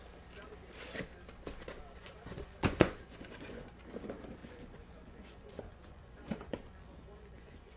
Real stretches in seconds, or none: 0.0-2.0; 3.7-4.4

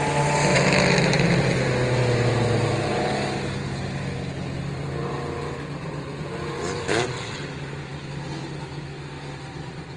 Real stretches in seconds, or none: 0.0-10.0

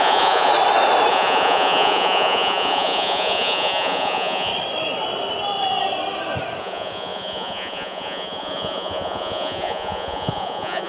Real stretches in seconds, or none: 0.5-1.1; 4.5-6.6

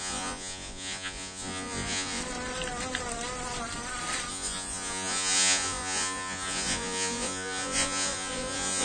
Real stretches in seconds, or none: 2.2-4.3

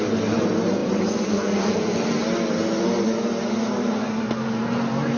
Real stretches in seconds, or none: 0.0-5.2

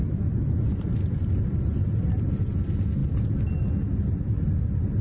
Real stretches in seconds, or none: 0.0-5.0

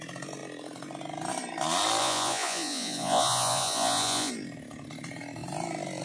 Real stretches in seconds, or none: 0.0-2.0; 4.3-6.0

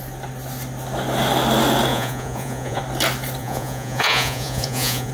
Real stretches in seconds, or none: 0.0-1.9; 2.8-3.4